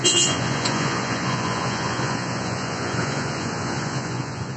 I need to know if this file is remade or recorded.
remade